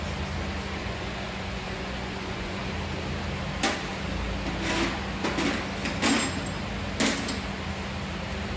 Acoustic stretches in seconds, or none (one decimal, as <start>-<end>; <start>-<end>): 0.0-0.8; 2.7-8.6